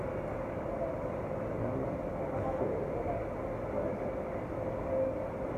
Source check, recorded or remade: recorded